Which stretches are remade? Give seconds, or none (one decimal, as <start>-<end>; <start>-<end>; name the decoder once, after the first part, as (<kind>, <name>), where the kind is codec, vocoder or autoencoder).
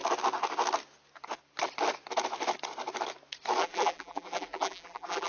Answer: 3.6-5.3 (vocoder, BigVGAN v2)